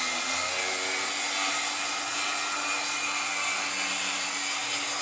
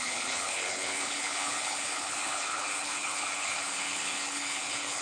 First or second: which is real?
first